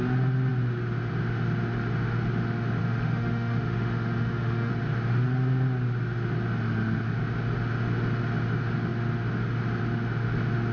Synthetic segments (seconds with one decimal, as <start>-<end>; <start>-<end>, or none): 2.8-4.7